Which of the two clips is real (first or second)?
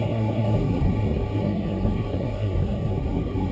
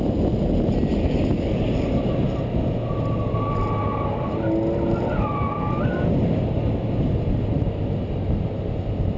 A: second